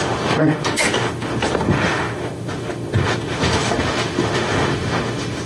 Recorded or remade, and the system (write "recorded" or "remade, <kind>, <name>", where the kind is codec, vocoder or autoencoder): remade, autoencoder, DAC-VAE